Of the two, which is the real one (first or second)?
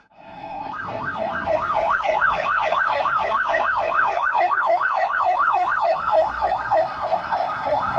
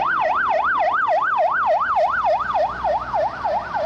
second